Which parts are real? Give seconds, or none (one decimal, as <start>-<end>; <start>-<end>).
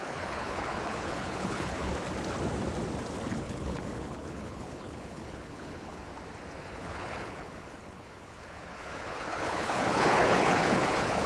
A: 1.9-3.3; 6.1-6.6